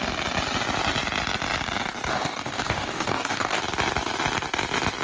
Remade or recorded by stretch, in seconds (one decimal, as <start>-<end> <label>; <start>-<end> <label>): 0.0-2.1 recorded; 2.1-3.6 remade; 3.6-5.0 recorded